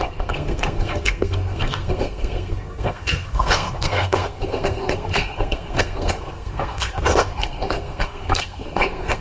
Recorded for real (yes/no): no